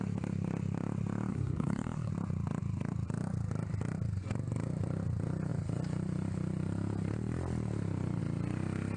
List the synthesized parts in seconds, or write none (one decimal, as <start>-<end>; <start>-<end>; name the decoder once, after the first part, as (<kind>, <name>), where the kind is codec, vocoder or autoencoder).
1.3-2.1 (codec, SNAC)